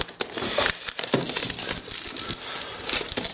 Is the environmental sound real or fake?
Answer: real